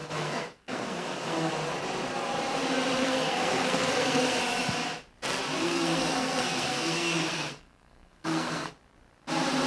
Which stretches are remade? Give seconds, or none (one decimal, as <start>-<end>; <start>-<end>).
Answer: 0.0-1.5; 3.0-4.4; 5.6-8.7